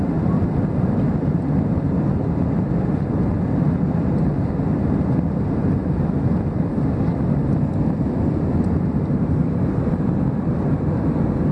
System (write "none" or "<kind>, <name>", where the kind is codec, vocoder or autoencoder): vocoder, BigVGAN v2